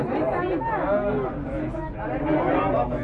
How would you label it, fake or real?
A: real